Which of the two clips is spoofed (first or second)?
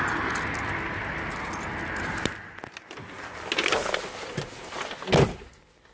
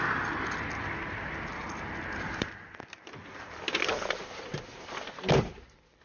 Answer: second